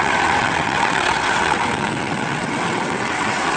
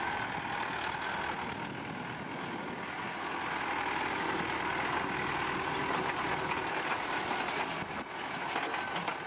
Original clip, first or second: second